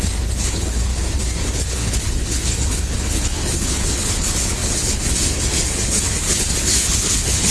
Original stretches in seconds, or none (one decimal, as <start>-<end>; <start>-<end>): 0.9-1.5